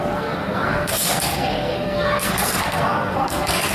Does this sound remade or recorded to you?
remade